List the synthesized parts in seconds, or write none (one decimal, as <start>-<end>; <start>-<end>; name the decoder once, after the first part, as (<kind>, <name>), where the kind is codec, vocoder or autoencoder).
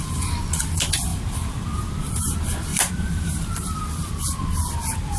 1.1-2.1 (vocoder, BigVGAN v2); 2.7-3.5